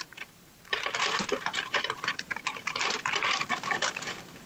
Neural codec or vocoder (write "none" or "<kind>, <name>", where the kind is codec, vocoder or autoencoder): vocoder, BigVGAN v2